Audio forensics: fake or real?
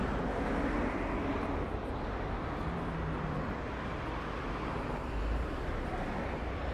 real